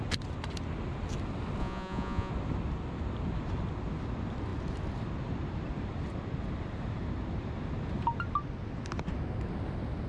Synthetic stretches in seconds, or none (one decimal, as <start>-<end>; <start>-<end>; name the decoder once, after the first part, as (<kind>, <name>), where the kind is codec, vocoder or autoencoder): 1.6-2.3 (vocoder, Vocos)